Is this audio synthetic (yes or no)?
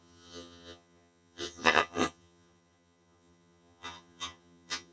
yes